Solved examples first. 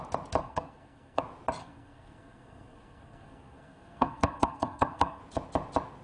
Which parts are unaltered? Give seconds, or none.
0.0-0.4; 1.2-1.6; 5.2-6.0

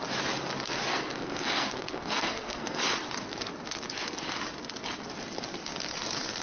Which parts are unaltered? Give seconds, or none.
0.0-0.9; 2.8-6.4

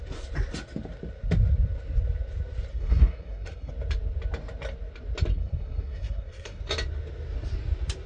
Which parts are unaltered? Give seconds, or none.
0.0-2.7; 3.7-5.3; 6.6-8.1

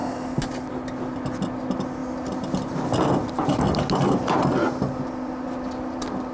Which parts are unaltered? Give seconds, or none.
0.0-6.3

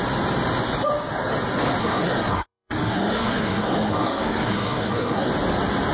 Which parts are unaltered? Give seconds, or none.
0.0-1.8; 5.3-5.9

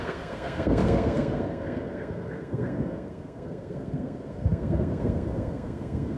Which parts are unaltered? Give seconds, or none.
none

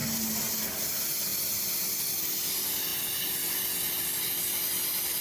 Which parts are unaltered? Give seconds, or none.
0.0-5.2

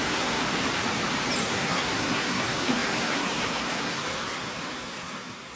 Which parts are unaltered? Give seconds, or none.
0.4-1.4